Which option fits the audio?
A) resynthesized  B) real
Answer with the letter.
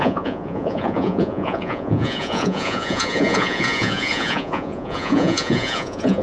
A